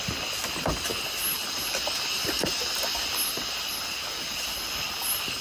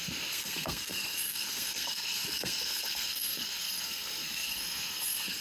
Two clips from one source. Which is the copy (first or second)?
second